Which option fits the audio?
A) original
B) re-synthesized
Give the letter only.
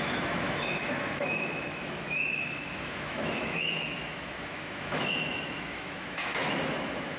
B